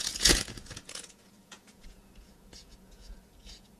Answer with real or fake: fake